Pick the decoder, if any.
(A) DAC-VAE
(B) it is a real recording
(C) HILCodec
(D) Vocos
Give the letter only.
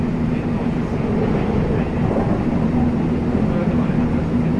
B